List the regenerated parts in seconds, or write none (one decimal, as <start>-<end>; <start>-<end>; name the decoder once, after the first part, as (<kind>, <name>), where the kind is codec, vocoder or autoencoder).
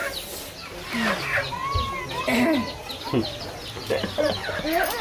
2.1-2.8 (vocoder, BigVGAN v2); 4.4-5.0